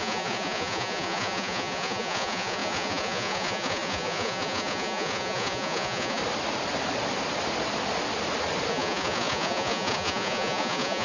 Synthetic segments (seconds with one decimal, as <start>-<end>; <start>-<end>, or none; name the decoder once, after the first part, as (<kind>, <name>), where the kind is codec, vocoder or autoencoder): 0.0-6.2 (vocoder, Vocos); 8.7-11.0

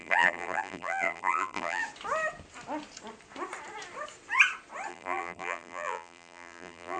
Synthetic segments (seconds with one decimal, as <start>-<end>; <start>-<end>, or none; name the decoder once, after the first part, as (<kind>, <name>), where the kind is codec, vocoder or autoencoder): 0.0-1.8 (vocoder, BigVGAN v2); 4.9-7.0